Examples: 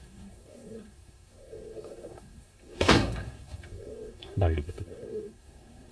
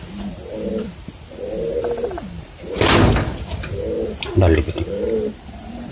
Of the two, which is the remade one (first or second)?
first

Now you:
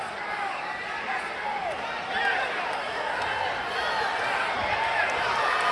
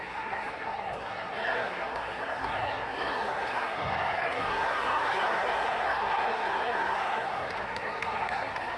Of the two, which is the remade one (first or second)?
second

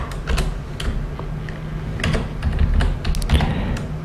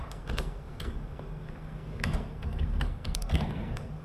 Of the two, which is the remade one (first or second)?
second